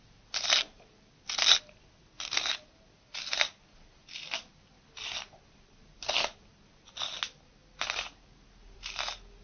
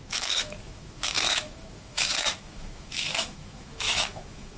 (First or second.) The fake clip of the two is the second